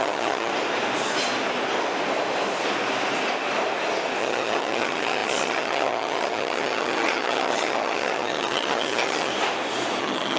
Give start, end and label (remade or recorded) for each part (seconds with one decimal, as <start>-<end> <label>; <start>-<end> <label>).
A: 0.0-0.5 remade; 0.5-4.2 recorded; 4.2-9.3 remade; 9.3-10.0 recorded; 10.0-10.4 remade